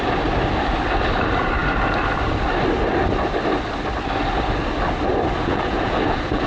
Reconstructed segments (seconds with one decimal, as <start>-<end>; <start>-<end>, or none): 5.4-6.5